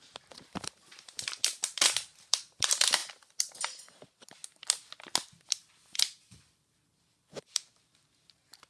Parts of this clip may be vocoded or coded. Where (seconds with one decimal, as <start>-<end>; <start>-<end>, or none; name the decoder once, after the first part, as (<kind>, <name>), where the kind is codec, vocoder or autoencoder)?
0.0-3.0 (vocoder, BigVGAN v2); 3.9-4.4; 7.4-8.7